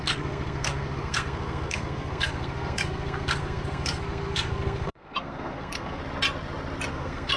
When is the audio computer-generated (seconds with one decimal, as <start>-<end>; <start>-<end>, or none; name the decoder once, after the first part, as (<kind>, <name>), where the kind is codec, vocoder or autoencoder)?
0.0-6.0 (codec, SNAC); 6.9-7.4